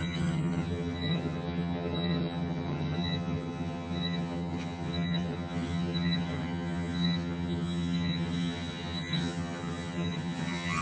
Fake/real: fake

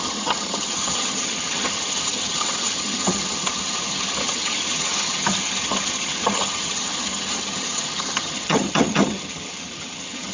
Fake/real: fake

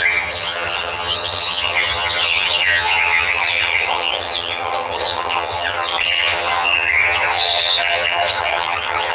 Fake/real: fake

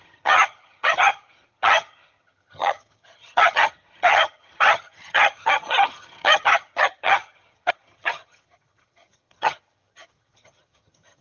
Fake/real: fake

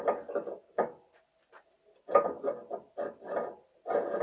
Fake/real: real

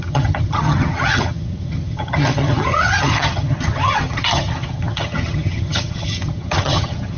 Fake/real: fake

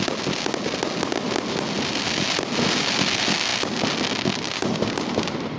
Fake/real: real